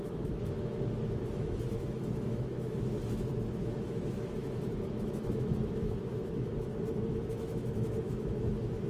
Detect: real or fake fake